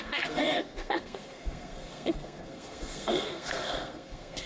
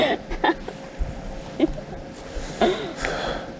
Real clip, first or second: second